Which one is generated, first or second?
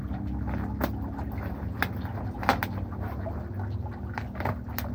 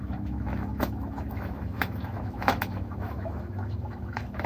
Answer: second